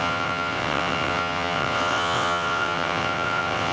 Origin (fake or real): fake